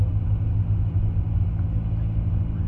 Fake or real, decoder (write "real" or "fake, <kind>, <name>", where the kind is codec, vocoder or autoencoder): real